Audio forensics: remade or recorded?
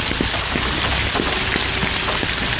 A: recorded